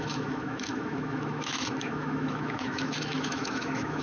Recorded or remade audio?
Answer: remade